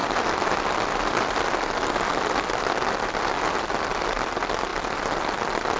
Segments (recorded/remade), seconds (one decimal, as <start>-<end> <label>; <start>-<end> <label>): 0.0-5.8 recorded